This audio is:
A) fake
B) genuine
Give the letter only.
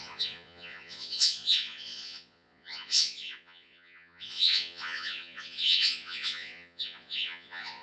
A